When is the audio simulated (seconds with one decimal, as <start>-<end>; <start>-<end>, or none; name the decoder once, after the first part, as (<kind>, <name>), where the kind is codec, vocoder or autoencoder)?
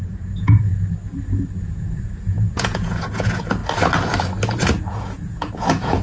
0.0-0.7 (vocoder, Vocos); 1.6-3.6; 4.9-6.0